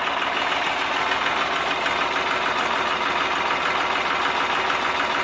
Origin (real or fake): real